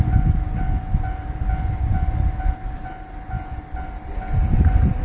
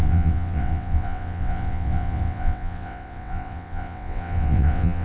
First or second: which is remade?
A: second